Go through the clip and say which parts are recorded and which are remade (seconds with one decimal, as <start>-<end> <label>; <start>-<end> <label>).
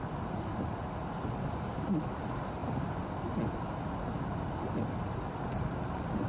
0.0-1.7 recorded; 1.7-2.2 remade; 2.2-2.6 recorded; 2.6-4.1 remade; 4.1-6.3 recorded